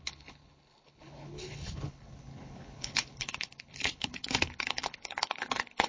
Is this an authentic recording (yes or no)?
no